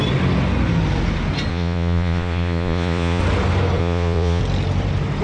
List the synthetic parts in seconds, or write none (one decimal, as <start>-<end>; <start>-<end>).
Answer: 1.5-3.2; 3.8-4.4